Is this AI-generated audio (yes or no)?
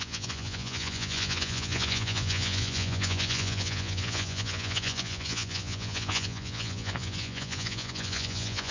yes